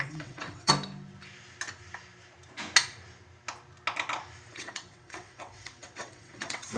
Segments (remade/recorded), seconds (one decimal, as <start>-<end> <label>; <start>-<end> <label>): 0.0-0.7 remade; 0.7-4.5 recorded; 4.5-6.8 remade